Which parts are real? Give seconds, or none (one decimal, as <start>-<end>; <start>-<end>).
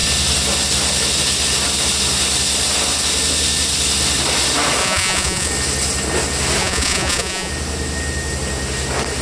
0.0-4.8; 5.5-6.6; 7.5-9.2